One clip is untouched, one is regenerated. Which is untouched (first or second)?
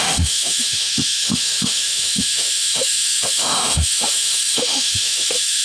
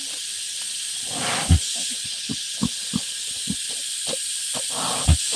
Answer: second